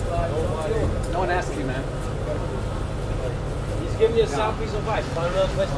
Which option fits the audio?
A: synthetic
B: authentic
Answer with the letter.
B